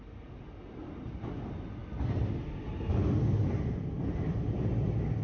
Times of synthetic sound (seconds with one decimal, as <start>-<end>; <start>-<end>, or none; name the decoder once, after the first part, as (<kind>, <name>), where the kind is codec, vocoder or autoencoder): none